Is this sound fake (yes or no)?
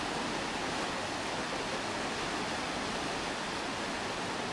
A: no